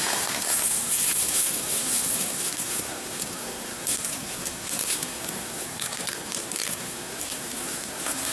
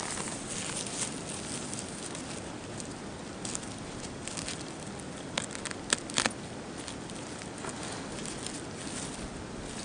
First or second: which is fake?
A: first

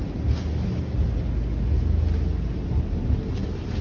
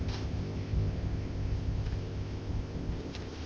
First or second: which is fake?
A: second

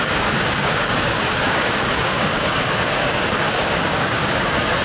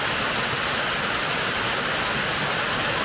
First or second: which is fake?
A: first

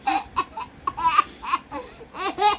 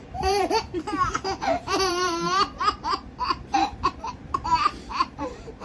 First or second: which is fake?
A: second